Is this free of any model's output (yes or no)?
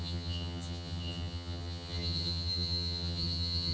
no